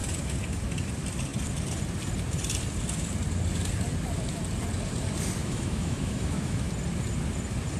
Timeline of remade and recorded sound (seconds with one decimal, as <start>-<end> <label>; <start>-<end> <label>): 0.0-5.4 recorded; 5.4-6.7 remade; 6.7-7.8 recorded